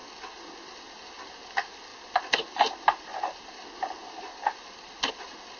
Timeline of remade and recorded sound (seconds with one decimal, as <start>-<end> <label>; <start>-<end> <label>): 0.0-5.6 recorded